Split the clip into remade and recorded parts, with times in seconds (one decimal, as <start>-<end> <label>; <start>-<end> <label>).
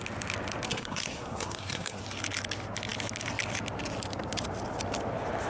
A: 0.0-0.7 recorded; 0.7-2.0 remade; 2.0-5.5 recorded